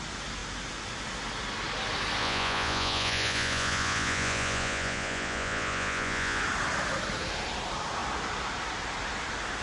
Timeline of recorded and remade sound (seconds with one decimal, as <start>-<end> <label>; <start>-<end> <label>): 0.0-2.2 recorded; 2.2-6.4 remade; 6.4-9.6 recorded